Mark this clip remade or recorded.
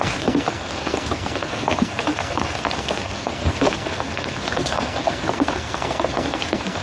remade